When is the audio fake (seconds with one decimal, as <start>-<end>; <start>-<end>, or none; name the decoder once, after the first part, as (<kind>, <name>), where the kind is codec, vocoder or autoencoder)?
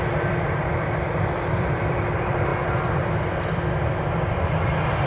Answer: 0.0-2.5 (vocoder, BigVGAN v2); 3.2-5.1